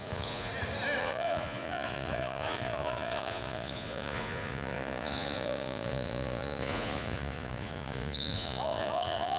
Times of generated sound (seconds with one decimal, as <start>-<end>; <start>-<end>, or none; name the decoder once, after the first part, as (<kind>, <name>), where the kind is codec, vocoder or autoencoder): 0.0-0.5 (vocoder, Vocos); 1.0-9.4

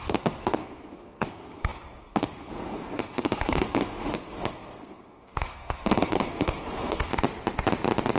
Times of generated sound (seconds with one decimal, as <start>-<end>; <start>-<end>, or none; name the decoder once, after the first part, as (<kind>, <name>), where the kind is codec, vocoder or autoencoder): 0.0-7.1 (codec, SNAC)